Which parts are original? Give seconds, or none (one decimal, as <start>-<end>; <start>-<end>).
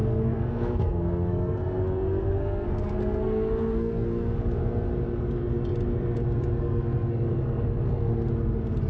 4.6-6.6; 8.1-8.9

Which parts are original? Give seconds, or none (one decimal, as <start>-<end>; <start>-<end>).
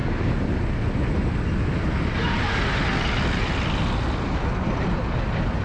0.0-5.6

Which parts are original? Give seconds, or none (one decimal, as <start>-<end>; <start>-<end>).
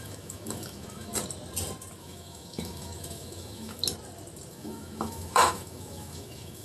1.1-2.0; 3.8-4.5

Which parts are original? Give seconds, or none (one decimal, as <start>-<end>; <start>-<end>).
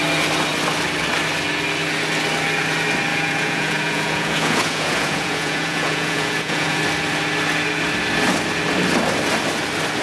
0.0-3.1; 6.8-10.0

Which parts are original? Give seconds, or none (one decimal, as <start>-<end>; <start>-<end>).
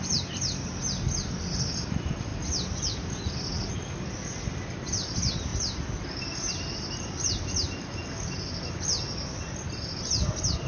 0.0-10.7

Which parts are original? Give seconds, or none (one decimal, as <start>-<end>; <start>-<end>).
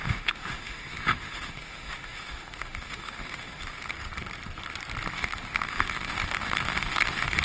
3.9-5.1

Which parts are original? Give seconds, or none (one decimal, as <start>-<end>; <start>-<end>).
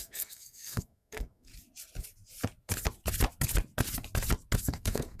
1.5-4.6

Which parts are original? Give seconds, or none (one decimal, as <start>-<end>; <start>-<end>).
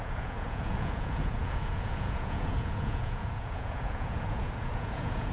none